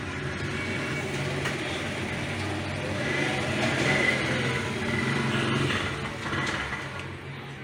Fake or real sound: real